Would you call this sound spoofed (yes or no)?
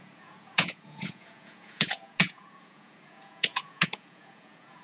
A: yes